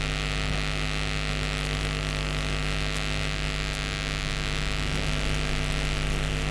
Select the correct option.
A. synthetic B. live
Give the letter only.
B